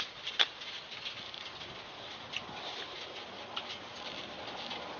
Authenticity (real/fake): real